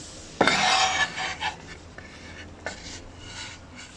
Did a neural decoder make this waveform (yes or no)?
no